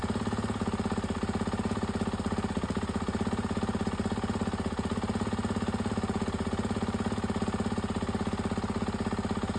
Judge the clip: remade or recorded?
recorded